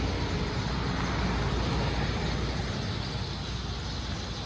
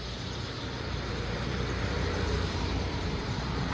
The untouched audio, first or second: first